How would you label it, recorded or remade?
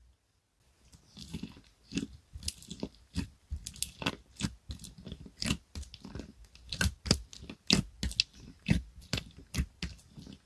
recorded